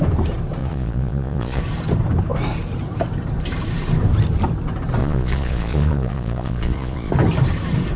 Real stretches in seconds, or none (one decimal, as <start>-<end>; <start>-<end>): 0.0-0.6; 1.6-5.0; 7.1-8.0